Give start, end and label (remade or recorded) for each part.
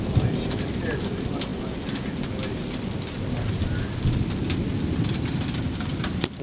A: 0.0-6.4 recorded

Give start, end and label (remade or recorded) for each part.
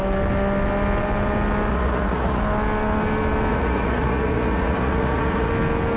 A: 0.0-1.7 recorded; 1.7-2.4 remade; 2.4-3.5 recorded; 3.5-5.5 remade; 5.5-6.0 recorded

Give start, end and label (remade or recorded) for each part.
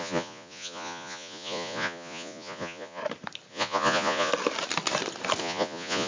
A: 0.0-3.0 remade; 3.0-3.5 recorded; 3.5-4.3 remade; 4.3-5.4 recorded; 5.4-6.1 remade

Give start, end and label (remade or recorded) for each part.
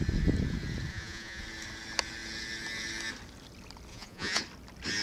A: 0.0-0.9 recorded; 0.9-1.4 remade; 1.4-3.9 recorded; 3.9-4.4 remade; 4.4-5.0 recorded